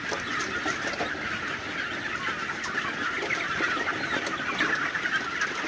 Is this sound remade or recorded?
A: recorded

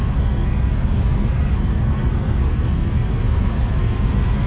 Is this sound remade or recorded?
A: remade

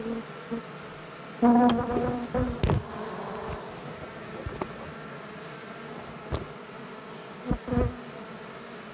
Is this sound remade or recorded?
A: recorded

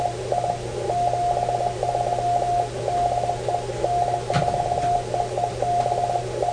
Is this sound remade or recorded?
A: recorded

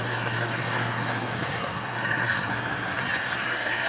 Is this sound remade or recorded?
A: remade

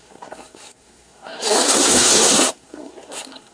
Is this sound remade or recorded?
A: remade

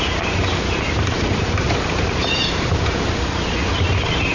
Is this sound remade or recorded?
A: recorded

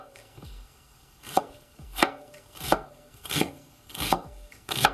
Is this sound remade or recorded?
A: remade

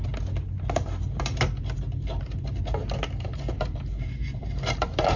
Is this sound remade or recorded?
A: recorded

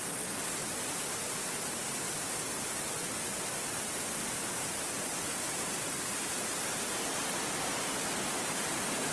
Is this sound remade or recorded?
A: recorded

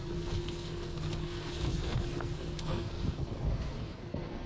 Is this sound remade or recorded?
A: remade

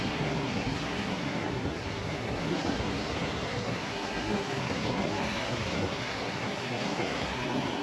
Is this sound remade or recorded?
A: remade